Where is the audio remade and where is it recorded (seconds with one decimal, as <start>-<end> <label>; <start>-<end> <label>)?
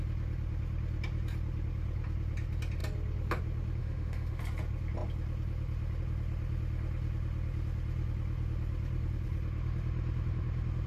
0.0-3.8 recorded; 3.8-4.4 remade; 4.4-10.9 recorded